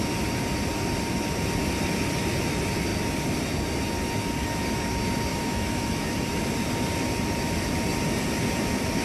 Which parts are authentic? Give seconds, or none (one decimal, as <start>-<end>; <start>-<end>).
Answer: 0.0-5.3; 6.1-9.0

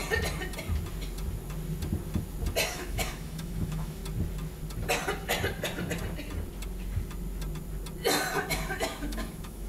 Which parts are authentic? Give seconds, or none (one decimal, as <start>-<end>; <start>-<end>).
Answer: 0.0-2.7; 4.0-8.5

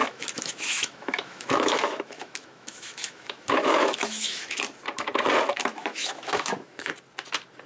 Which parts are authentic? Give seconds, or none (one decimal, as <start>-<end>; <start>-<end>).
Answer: 4.6-5.7; 6.9-7.7

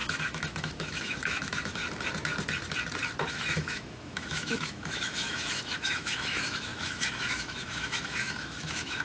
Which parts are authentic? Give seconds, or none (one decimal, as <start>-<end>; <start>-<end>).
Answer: 1.8-3.2